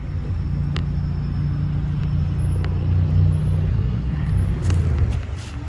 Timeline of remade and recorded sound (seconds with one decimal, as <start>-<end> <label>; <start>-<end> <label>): 0.0-3.7 recorded; 3.7-4.3 remade; 4.3-5.7 recorded